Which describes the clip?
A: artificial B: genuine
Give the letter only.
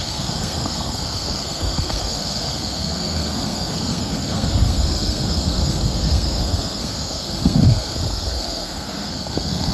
A